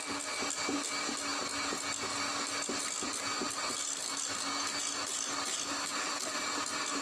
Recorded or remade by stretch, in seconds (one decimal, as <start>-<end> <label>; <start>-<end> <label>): 0.0-7.0 recorded